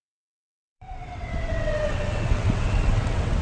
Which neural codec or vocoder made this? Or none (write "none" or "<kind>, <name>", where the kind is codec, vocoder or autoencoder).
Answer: vocoder, WaveNeXt